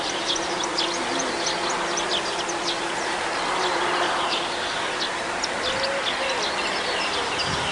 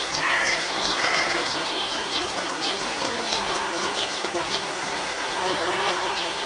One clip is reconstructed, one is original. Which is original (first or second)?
first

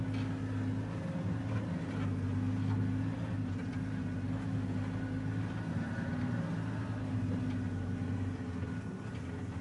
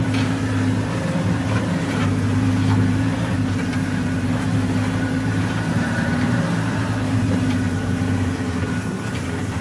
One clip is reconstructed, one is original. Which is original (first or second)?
first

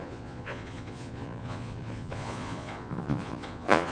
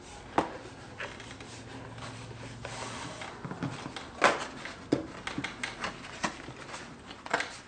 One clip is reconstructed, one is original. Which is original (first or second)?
second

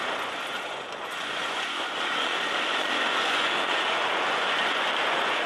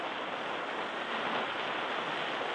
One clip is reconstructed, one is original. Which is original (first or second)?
second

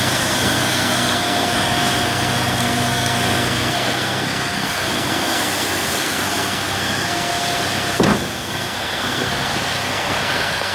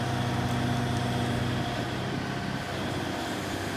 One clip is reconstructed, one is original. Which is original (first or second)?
second